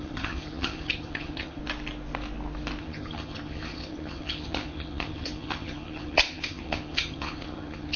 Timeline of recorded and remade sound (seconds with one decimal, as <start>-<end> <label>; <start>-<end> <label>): 0.0-1.6 remade; 1.6-2.8 recorded; 2.8-8.0 remade